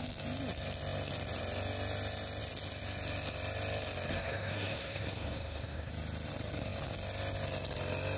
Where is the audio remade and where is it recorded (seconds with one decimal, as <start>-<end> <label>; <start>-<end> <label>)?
0.0-4.1 recorded; 4.1-5.9 remade; 5.9-8.2 recorded